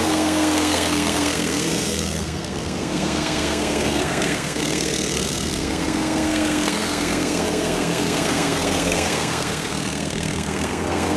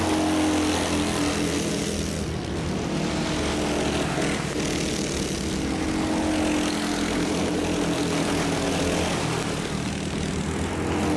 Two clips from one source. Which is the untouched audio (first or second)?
second